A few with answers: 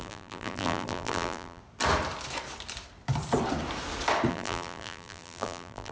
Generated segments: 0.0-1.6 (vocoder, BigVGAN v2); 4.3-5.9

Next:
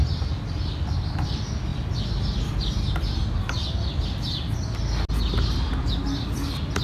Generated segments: none

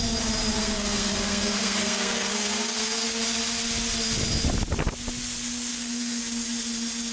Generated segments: 0.5-3.2 (codec, SNAC); 5.7-6.2

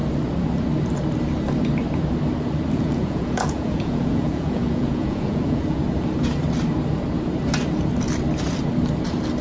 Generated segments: 2.7-5.8 (vocoder, Vocos)

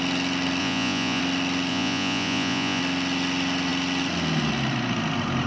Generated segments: 0.6-1.2 (vocoder, Vocos); 1.7-2.8

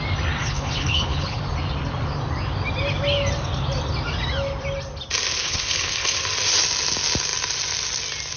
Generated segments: 0.4-1.4 (codec, HILCodec); 5.4-6.2

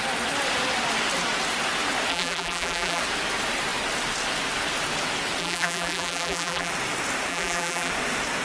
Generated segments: 2.1-3.0 (vocoder, BigVGAN v2); 5.4-6.7; 7.3-7.9

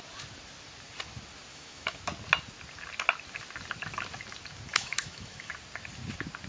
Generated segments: 1.5-2.0 (autoencoder, DAC-VAE); 4.7-5.5